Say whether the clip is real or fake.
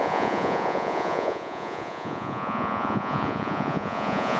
fake